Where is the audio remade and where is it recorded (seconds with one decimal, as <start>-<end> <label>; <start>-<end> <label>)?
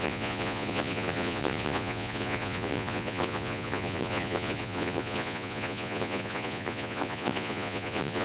0.0-8.2 remade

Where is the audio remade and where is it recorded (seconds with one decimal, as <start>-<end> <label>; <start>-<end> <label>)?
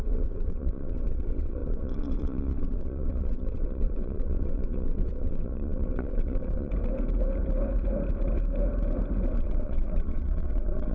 0.0-6.7 remade; 6.7-9.4 recorded; 9.4-10.9 remade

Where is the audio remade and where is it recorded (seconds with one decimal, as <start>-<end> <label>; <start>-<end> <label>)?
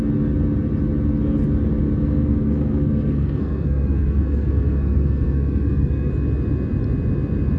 0.0-2.0 recorded; 2.0-6.1 remade; 6.1-7.6 recorded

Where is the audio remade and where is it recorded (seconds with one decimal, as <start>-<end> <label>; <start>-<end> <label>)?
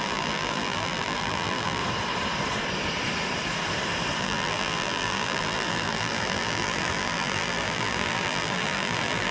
0.0-1.8 remade; 1.8-4.2 recorded; 4.2-9.3 remade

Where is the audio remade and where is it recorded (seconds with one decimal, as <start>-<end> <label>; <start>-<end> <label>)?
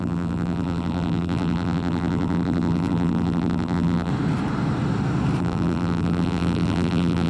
0.0-4.1 remade; 4.1-5.4 recorded; 5.4-7.3 remade